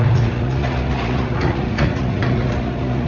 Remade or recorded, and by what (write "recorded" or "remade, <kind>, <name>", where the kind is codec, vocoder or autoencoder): remade, vocoder, Vocos